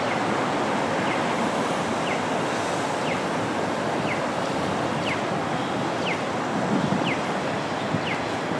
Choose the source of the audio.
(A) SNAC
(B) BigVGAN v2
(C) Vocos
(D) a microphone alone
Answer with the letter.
D